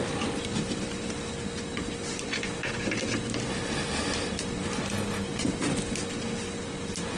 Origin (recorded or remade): recorded